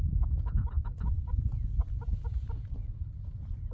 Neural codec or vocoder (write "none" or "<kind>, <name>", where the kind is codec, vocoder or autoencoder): vocoder, BigVGAN v2